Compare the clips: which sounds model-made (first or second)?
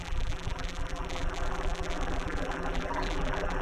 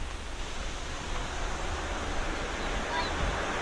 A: first